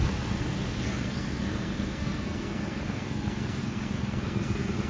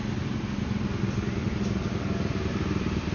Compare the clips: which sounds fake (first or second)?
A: first